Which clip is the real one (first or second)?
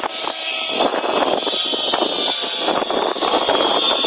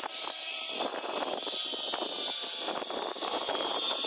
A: first